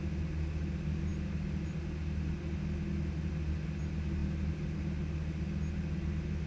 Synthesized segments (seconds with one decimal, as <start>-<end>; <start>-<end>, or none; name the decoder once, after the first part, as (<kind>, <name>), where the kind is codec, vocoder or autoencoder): none